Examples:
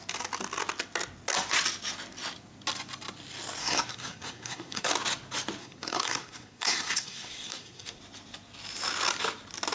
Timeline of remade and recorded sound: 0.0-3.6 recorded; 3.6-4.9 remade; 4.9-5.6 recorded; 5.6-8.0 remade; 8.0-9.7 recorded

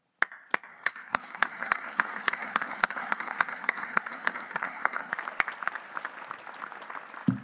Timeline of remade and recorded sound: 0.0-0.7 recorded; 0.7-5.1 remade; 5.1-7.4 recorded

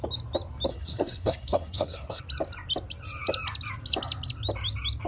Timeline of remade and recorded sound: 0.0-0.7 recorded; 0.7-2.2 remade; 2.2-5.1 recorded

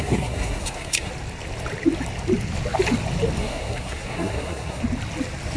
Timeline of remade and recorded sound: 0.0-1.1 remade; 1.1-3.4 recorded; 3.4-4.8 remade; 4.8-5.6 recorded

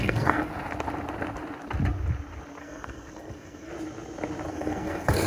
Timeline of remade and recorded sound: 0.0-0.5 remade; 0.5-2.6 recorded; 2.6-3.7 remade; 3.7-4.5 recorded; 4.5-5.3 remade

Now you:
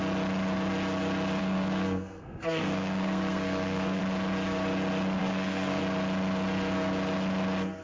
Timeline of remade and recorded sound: 0.0-1.4 recorded; 1.4-4.0 remade; 4.0-5.2 recorded; 5.2-5.8 remade; 5.8-7.8 recorded

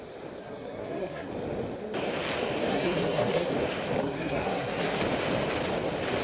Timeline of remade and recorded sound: 0.0-0.4 recorded; 0.4-1.3 remade; 1.3-2.7 recorded; 2.7-3.5 remade; 3.5-4.0 recorded; 4.0-5.0 remade; 5.0-6.2 recorded